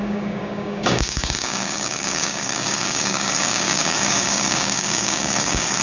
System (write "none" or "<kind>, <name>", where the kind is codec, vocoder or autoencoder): codec, DAC